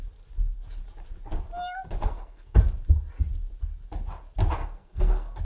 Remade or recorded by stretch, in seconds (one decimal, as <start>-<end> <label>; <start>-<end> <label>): 0.0-2.0 recorded; 2.0-2.6 remade; 2.6-4.6 recorded; 4.6-5.4 remade